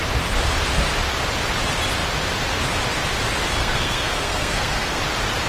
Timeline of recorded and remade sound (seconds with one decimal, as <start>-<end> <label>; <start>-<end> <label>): 0.0-3.6 recorded; 3.6-5.0 remade; 5.0-5.5 recorded